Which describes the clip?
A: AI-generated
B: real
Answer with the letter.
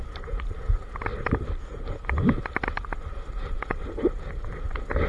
B